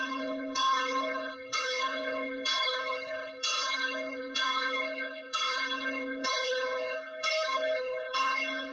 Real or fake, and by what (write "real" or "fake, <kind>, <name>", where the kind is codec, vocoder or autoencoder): fake, codec, HILCodec